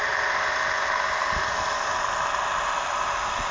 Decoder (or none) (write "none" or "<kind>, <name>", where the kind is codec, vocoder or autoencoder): none